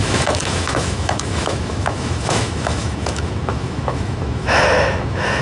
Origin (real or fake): fake